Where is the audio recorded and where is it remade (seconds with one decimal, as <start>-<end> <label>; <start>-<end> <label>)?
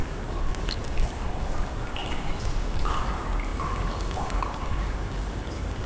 0.0-5.9 remade